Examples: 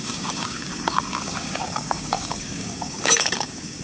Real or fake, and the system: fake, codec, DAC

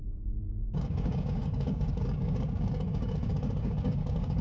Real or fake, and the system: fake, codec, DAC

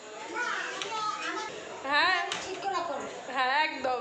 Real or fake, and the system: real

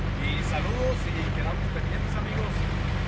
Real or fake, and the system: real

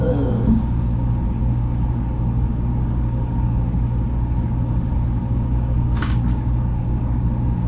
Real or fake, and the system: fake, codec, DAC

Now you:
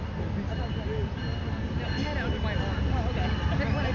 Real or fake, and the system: real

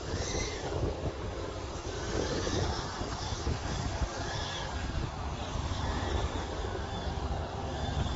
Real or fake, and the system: fake, codec, DAC